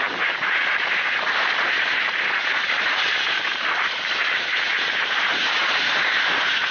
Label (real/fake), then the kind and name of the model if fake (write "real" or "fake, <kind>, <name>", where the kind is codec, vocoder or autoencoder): fake, vocoder, BigVGAN v2